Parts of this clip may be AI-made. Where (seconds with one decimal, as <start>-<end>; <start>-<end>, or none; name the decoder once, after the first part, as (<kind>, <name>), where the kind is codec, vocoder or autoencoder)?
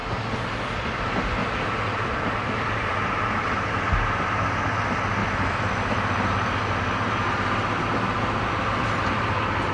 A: 1.4-3.7 (vocoder, BigVGAN v2); 5.2-9.1